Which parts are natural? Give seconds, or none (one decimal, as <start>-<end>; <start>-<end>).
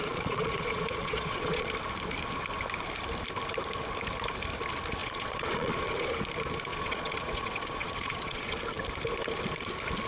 1.7-5.0; 6.1-6.7; 8.6-10.1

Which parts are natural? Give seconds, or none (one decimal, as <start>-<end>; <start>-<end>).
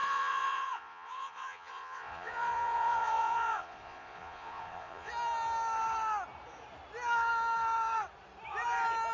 5.1-9.1